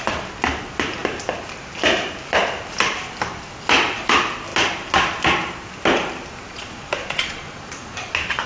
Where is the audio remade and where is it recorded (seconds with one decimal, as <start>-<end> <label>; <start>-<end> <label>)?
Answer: 0.0-6.5 recorded; 6.5-8.1 remade; 8.1-8.5 recorded